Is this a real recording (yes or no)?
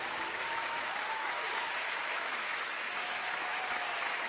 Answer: no